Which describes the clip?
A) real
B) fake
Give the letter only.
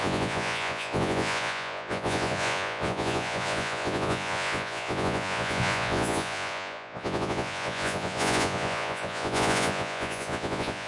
B